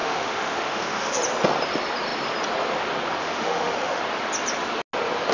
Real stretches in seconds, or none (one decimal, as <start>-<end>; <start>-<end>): 1.2-3.2; 4.0-5.3

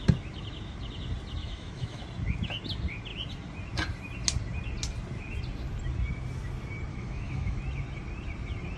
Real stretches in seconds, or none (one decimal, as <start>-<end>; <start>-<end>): 0.0-1.4; 2.0-6.9; 7.6-8.8